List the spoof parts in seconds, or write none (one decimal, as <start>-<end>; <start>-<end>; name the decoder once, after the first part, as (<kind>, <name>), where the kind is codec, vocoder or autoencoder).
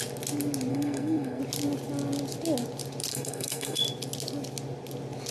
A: 0.7-1.4 (codec, SNAC); 3.1-3.8